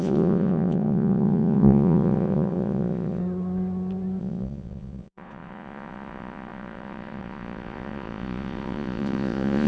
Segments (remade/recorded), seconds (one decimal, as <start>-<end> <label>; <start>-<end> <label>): 0.0-3.2 remade; 3.2-4.2 recorded; 4.2-9.7 remade